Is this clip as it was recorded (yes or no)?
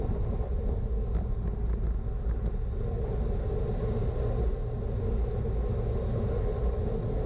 yes